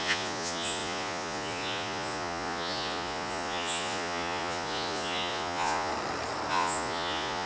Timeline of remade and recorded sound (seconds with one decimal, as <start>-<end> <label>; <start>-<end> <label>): 0.0-5.9 remade; 5.9-6.5 recorded; 6.5-7.5 remade